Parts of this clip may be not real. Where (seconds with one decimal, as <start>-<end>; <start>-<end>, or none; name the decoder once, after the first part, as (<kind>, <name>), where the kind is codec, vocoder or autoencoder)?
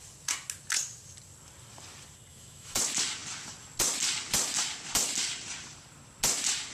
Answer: 2.3-2.8 (autoencoder, DAC-VAE)